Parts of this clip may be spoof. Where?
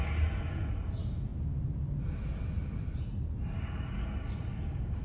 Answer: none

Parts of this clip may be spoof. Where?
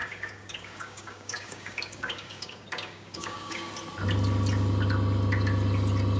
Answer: 0.0-3.7 (codec, DAC)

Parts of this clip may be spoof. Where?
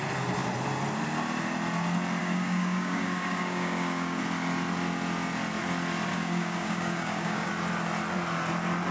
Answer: 2.2-4.2 (codec, DAC); 6.1-7.5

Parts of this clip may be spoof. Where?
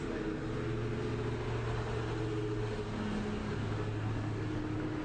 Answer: 3.4-4.6 (codec, DAC)